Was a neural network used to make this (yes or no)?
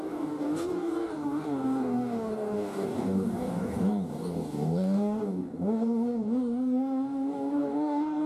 yes